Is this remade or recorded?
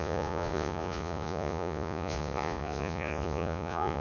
remade